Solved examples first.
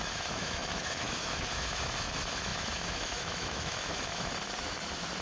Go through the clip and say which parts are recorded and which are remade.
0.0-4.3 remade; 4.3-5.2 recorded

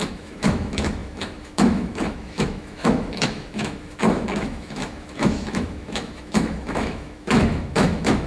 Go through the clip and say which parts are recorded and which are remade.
0.0-8.3 remade

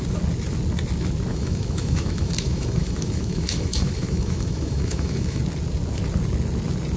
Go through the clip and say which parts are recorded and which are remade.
0.0-1.3 recorded; 1.3-5.4 remade; 5.4-7.0 recorded